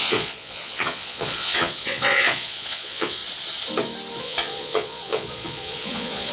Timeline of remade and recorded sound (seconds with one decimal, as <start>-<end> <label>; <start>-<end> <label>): 0.0-3.2 remade; 3.2-4.2 recorded; 4.2-6.3 remade